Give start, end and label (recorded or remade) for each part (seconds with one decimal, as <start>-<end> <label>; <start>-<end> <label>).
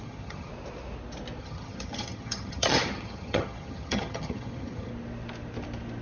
0.0-0.5 remade; 0.5-1.4 recorded; 1.4-4.9 remade; 4.9-6.0 recorded